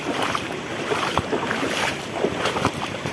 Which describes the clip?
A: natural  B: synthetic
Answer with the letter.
B